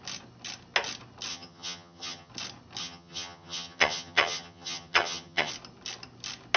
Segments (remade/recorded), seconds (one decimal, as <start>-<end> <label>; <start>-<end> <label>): 0.0-1.3 recorded; 1.3-2.3 remade; 2.3-2.8 recorded; 2.8-5.5 remade; 5.5-6.6 recorded